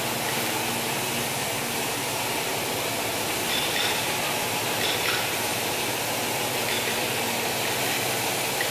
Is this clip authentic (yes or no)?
yes